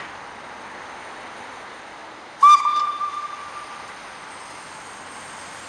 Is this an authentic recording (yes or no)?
yes